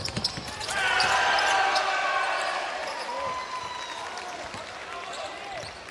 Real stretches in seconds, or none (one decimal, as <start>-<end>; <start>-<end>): 0.0-5.9